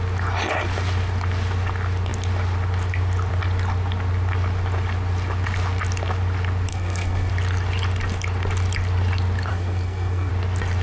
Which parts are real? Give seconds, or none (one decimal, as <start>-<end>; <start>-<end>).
0.0-6.7; 7.3-9.5; 10.3-10.8